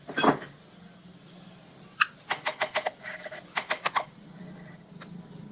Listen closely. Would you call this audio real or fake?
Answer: real